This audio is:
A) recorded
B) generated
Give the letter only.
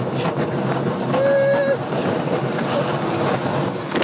A